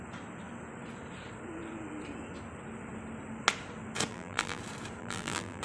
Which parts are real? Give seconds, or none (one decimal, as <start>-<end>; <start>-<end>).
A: 0.0-4.1; 4.6-5.0